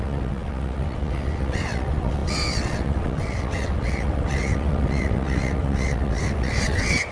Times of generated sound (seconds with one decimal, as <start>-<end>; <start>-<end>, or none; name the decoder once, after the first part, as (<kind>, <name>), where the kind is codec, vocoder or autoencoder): 0.0-7.1 (vocoder, WaveNeXt)